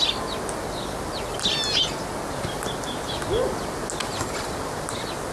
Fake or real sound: real